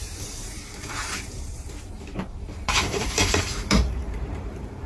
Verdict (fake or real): fake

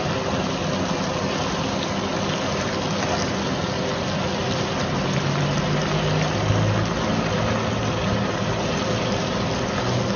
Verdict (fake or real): real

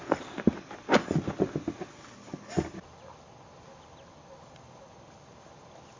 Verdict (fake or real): real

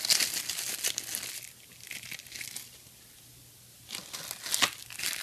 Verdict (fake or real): real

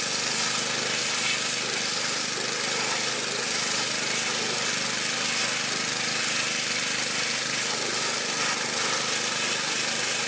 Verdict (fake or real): real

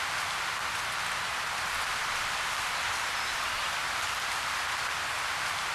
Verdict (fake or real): real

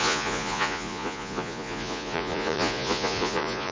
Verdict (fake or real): fake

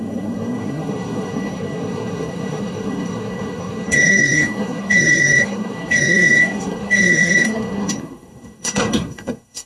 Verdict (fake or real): fake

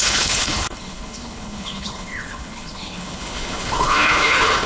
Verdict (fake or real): fake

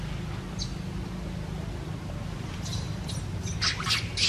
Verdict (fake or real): real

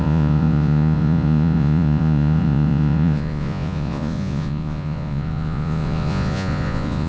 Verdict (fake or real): fake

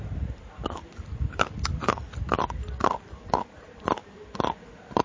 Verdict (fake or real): real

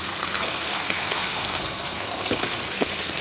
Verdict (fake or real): fake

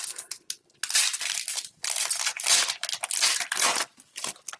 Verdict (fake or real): real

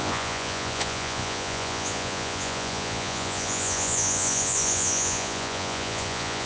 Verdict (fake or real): fake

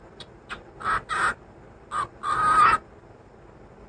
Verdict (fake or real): real